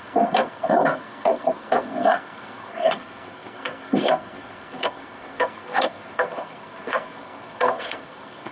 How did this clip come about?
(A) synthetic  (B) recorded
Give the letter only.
A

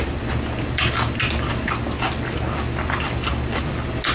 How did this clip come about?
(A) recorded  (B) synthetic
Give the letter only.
A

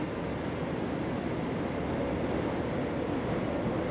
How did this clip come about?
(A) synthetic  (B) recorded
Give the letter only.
B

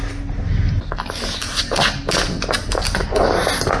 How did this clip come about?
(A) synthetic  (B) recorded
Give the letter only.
B